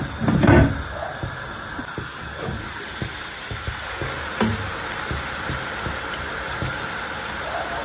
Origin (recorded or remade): recorded